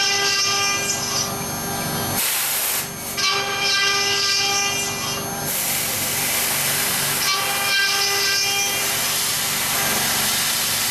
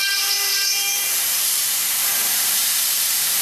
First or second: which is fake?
second